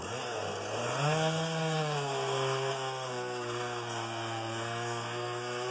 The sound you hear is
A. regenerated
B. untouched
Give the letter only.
A